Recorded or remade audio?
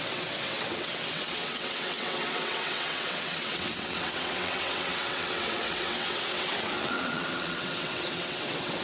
remade